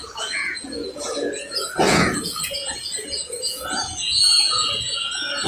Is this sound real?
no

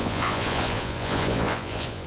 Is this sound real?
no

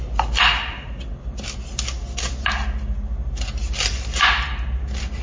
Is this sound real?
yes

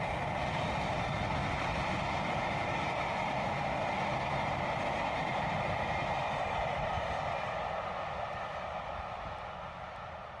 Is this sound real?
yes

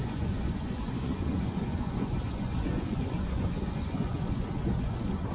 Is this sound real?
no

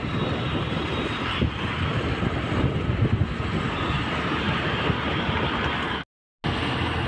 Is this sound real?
yes